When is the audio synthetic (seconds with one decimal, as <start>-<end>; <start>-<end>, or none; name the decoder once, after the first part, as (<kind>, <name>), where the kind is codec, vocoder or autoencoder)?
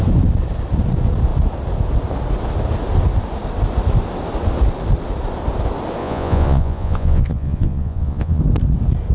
6.0-8.4 (vocoder, Vocos)